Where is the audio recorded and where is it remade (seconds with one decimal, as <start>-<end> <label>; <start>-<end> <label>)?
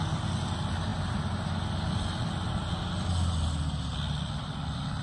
0.0-5.0 recorded